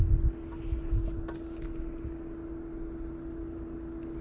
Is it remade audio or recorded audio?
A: recorded